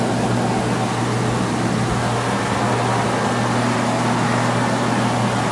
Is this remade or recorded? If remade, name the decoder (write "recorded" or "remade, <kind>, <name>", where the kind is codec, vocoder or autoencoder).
recorded